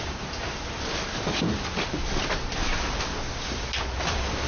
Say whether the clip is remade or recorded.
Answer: recorded